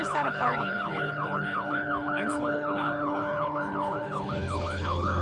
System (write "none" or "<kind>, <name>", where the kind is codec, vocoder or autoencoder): codec, HILCodec